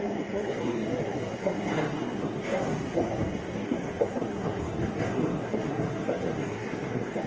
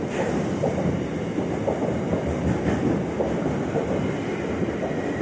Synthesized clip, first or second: first